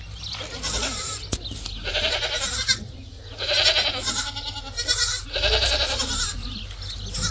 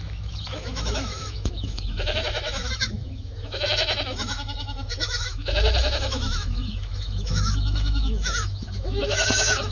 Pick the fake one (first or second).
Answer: second